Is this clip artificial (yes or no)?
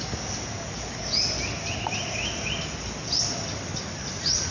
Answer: no